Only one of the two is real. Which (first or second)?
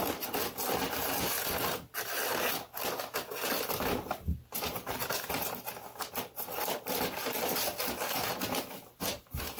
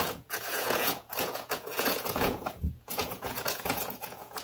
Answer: first